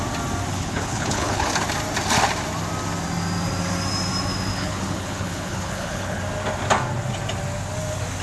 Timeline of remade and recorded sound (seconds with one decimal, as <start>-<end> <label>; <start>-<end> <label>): 0.0-0.5 recorded; 0.5-1.5 remade; 1.5-4.5 recorded; 4.5-6.2 remade; 6.2-8.2 recorded